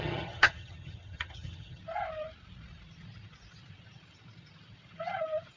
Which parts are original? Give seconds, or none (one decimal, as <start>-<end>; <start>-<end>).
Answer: 1.8-5.6